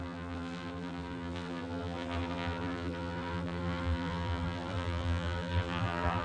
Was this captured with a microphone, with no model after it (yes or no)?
no